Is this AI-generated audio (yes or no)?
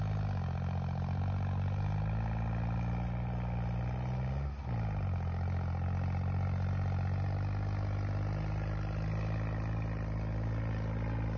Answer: no